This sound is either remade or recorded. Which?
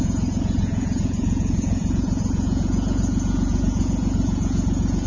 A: remade